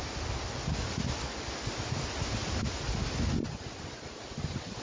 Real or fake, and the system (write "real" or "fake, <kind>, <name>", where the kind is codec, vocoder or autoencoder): real